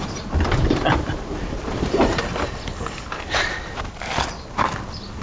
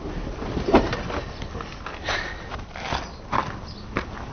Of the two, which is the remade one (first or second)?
first